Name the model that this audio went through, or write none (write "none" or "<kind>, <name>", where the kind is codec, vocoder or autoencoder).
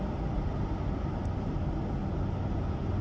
none